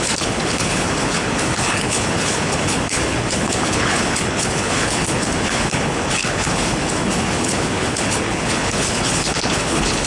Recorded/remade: remade